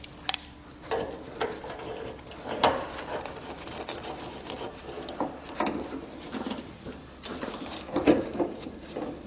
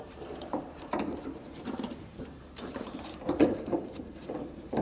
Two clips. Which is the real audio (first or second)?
first